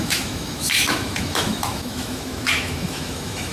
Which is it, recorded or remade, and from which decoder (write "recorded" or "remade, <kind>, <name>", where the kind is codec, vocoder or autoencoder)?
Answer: remade, autoencoder, DAC-VAE